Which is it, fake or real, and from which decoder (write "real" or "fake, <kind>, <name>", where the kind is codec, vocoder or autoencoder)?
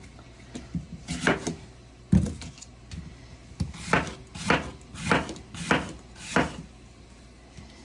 real